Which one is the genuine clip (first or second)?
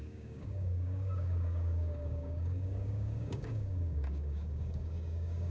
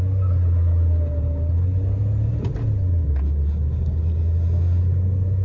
second